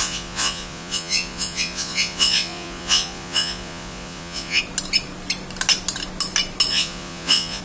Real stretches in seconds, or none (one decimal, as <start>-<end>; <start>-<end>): 4.6-6.7